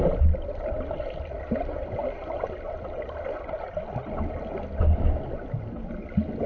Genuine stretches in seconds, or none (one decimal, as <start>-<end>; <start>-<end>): 0.0-6.5